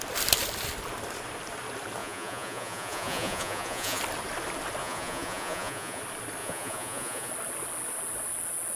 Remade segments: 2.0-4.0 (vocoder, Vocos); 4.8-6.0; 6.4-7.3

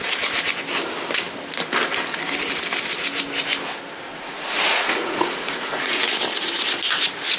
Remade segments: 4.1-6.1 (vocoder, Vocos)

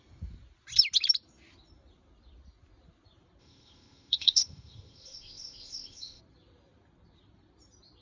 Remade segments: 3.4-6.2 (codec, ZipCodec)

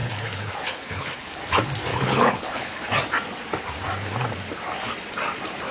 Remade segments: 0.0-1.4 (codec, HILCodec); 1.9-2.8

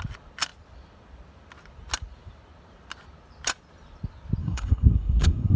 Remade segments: 4.4-5.6 (codec, SNAC)